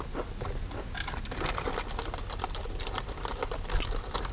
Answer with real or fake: real